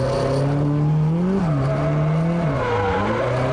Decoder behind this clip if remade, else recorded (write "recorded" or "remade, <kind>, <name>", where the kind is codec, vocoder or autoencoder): recorded